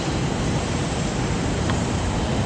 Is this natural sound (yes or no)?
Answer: yes